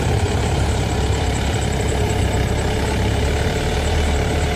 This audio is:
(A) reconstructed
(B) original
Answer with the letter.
A